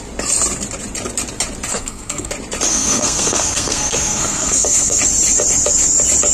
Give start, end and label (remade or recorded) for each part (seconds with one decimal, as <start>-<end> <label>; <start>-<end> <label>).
0.0-1.7 recorded; 1.7-2.3 remade; 2.3-2.7 recorded; 2.7-5.0 remade; 5.0-6.3 recorded